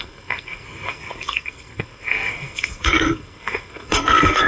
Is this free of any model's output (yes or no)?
no